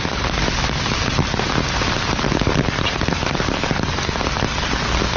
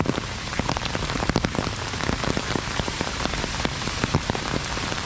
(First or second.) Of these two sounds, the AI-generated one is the second